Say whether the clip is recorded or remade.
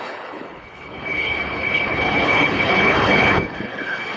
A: remade